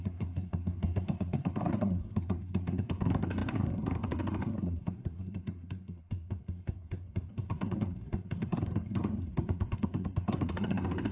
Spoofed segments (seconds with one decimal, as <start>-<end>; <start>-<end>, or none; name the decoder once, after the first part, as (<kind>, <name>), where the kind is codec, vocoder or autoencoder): 0.0-11.1 (codec, SNAC)